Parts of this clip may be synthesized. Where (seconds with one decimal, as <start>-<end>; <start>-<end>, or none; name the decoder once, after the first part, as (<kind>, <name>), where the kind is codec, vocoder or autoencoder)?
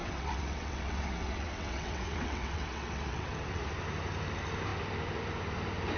0.0-3.6 (vocoder, WaveNeXt)